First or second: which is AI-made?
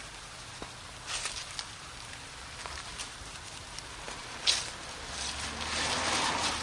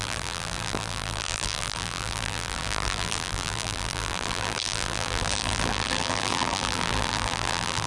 second